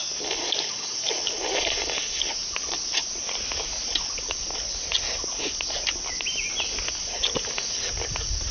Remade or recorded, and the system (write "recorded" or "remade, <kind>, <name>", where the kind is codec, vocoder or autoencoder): recorded